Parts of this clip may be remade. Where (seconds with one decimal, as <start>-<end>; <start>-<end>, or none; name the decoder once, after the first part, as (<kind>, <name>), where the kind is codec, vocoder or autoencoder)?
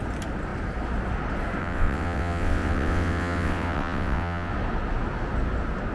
1.6-4.5 (vocoder, WaveNeXt)